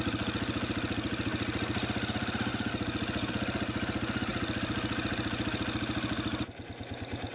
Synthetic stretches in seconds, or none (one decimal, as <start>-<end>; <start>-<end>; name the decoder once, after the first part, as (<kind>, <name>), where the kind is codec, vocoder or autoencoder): none

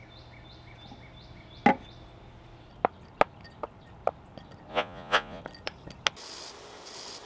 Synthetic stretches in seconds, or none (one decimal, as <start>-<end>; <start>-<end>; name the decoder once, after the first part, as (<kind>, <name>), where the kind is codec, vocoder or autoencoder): 4.7-5.4 (vocoder, Vocos)

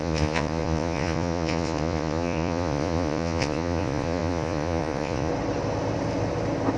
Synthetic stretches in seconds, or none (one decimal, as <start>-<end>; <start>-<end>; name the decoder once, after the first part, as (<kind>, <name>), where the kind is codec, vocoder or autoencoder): 0.0-5.3 (vocoder, Vocos)